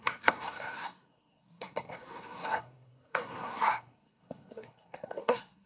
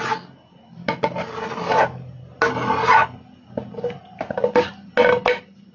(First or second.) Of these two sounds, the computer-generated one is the first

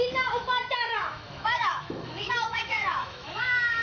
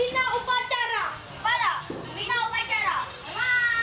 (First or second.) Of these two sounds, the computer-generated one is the first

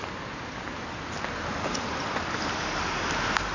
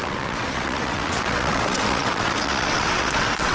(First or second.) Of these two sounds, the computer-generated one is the second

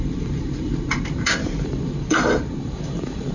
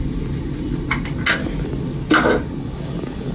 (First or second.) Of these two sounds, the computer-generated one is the first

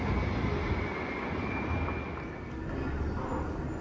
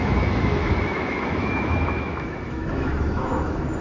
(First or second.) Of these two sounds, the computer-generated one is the second